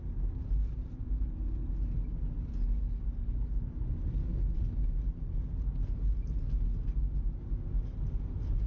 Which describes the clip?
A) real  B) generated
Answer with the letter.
A